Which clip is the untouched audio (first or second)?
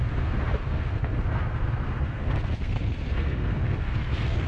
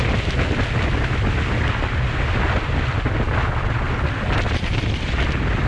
second